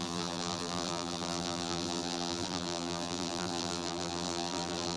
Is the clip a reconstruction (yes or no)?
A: yes